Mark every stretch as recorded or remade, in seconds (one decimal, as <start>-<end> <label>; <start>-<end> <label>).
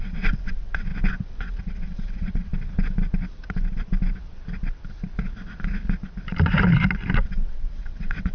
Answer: 0.0-0.9 remade; 0.9-1.4 recorded; 1.4-2.5 remade; 2.5-7.2 recorded; 7.2-8.3 remade